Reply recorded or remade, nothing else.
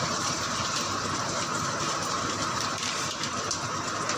remade